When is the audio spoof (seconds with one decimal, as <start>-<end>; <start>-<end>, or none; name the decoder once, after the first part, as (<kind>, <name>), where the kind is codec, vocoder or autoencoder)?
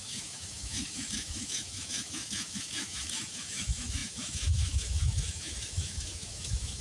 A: 0.0-6.8 (autoencoder, DAC-VAE)